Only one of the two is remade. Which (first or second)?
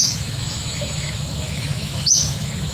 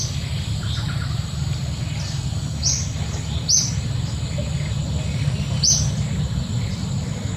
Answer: first